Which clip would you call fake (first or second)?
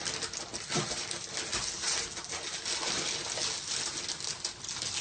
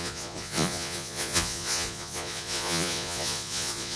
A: second